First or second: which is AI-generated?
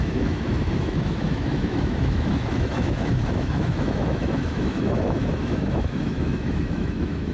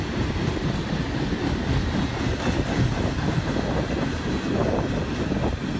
first